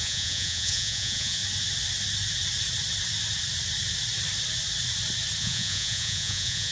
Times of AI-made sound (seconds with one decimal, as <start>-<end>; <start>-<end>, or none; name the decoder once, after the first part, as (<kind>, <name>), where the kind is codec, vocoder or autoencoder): 0.0-1.4 (vocoder, Vocos); 5.4-6.7